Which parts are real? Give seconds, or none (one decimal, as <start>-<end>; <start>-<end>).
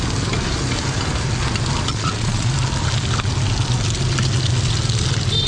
0.0-1.9; 2.5-5.5